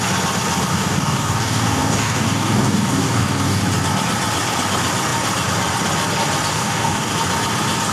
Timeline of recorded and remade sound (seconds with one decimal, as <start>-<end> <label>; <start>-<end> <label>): 0.0-0.7 recorded; 0.7-3.6 remade; 3.6-6.5 recorded; 6.5-7.1 remade; 7.1-7.9 recorded